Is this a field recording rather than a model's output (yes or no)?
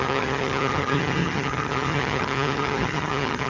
no